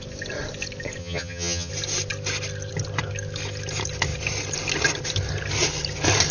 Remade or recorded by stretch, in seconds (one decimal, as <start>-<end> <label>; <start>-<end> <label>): 0.0-1.0 recorded; 1.0-1.7 remade; 1.7-6.3 recorded